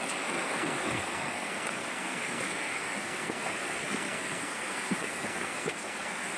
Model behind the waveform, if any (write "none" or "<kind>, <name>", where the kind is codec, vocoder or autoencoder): codec, SNAC